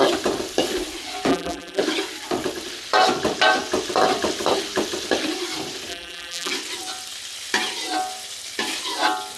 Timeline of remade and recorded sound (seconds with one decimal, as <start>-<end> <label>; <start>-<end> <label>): 0.0-1.3 recorded; 1.3-1.8 remade; 1.8-5.9 recorded; 5.9-6.5 remade; 6.5-9.4 recorded